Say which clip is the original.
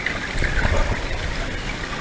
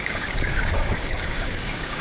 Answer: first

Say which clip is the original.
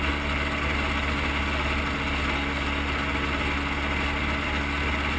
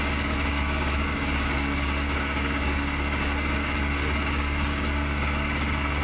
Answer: first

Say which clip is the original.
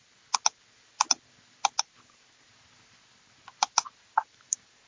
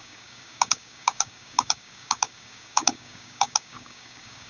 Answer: first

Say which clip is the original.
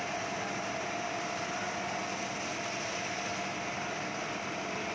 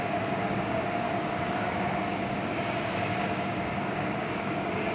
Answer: first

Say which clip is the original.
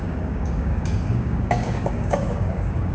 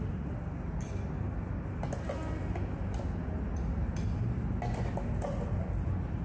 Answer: second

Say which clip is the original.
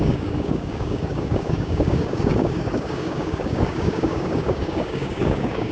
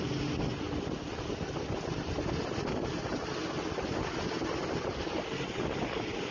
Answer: second